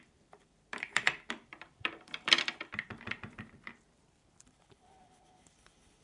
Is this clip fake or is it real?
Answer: fake